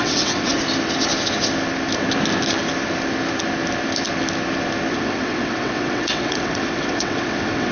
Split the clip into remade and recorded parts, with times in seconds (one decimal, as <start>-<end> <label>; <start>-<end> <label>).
0.0-0.5 remade; 0.5-4.9 recorded; 4.9-7.7 remade